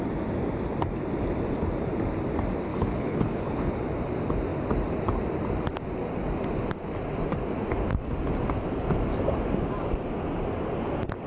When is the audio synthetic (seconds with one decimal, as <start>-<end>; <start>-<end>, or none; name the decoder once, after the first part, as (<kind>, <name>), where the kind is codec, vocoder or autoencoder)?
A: 2.7-3.7 (codec, HILCodec)